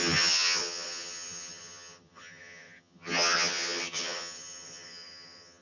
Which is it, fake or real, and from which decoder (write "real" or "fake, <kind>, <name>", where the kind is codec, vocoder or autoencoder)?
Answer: fake, vocoder, HiFi-GAN